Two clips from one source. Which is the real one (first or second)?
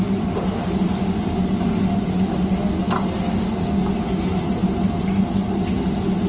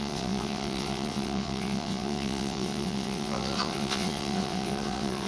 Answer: first